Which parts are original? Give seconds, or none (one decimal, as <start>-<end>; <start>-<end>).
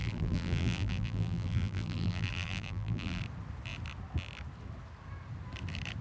3.2-6.0